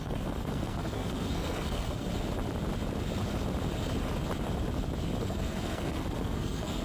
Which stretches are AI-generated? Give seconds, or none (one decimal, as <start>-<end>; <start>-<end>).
0.0-2.1; 5.2-6.8